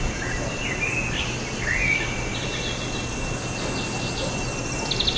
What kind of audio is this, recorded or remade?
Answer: recorded